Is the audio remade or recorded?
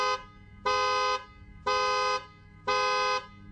recorded